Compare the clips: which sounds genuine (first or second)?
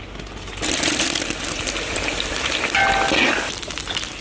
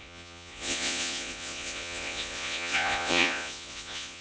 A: first